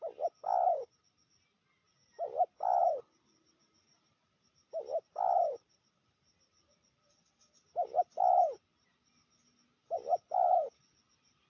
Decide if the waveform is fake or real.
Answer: real